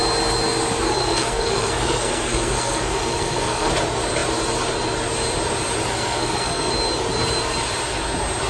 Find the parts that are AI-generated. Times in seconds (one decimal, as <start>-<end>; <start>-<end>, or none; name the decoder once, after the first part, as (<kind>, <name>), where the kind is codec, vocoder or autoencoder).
1.0-3.7 (codec, SNAC); 5.9-6.7